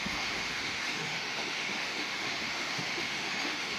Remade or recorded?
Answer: remade